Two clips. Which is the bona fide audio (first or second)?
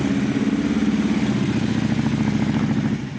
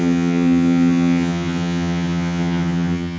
first